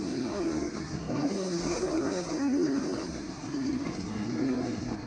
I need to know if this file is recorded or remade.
remade